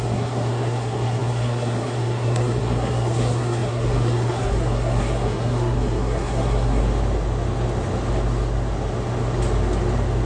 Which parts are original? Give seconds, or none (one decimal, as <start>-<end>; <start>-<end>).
6.8-10.3